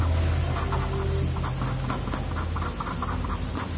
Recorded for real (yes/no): yes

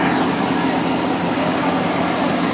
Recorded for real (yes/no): yes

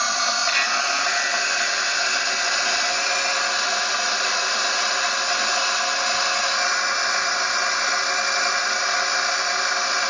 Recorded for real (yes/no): yes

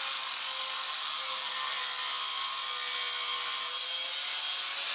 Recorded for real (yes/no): yes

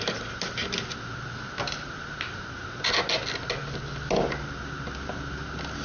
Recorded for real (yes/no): yes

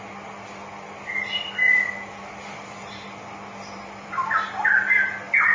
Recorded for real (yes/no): yes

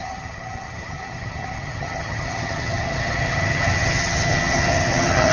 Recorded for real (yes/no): no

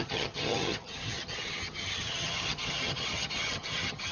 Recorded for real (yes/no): no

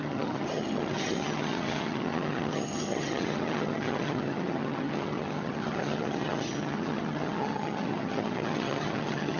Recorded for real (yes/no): no